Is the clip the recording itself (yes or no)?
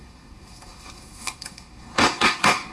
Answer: no